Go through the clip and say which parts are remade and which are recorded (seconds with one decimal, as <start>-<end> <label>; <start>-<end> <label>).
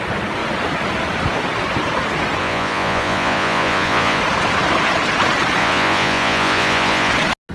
0.0-2.4 recorded; 2.4-4.2 remade; 4.2-5.6 recorded; 5.6-7.1 remade; 7.1-7.5 recorded